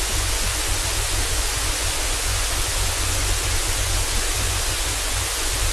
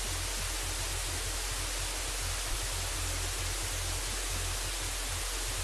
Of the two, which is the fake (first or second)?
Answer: first